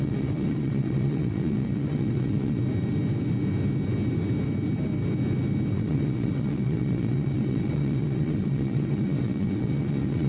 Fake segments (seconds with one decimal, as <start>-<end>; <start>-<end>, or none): 0.0-2.6; 5.7-10.3